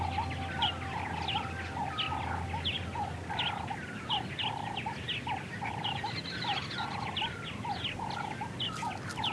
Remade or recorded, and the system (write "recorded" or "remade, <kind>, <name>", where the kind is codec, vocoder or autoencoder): recorded